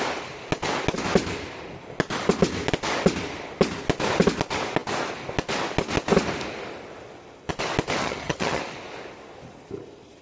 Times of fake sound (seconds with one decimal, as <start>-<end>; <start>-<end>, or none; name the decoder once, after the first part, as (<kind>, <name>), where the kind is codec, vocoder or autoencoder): 8.0-8.6 (vocoder, HiFi-GAN)